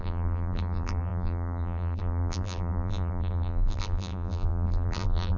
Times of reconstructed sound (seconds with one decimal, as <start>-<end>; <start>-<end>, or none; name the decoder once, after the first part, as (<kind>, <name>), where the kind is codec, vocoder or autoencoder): 0.0-5.4 (vocoder, BigVGAN v2)